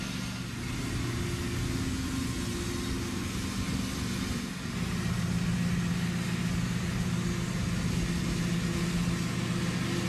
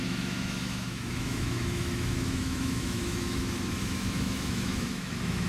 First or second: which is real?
first